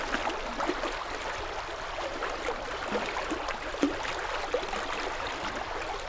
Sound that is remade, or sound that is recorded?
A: recorded